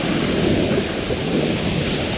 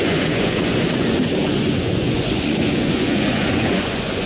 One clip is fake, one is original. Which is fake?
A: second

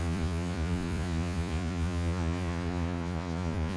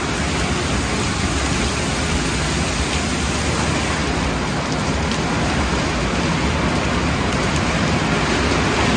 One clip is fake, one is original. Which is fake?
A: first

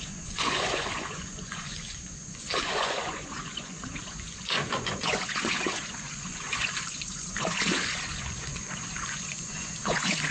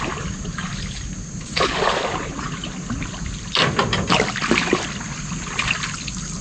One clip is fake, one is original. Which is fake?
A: first